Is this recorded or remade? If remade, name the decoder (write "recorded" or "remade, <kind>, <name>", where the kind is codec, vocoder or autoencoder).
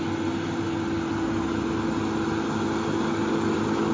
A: recorded